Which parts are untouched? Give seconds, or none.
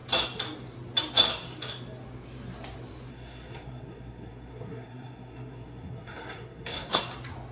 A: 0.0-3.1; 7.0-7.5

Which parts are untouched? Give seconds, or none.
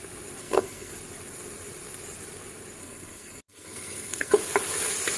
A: 0.0-0.4; 0.9-2.8; 4.4-5.2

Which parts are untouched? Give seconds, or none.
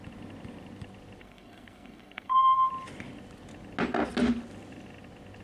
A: 0.0-1.2; 2.7-5.4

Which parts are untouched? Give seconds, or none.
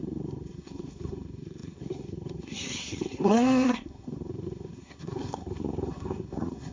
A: none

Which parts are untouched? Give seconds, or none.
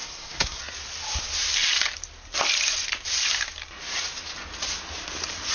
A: 0.6-5.5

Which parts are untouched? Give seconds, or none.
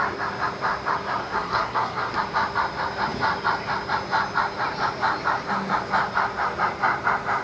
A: 0.0-1.2; 2.1-7.4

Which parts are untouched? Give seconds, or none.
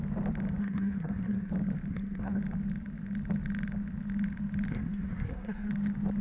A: 0.0-0.6; 1.5-1.9; 2.4-4.7; 5.7-6.2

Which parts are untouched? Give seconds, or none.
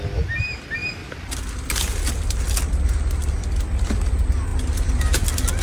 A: 0.0-5.6